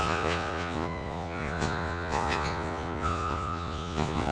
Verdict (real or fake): fake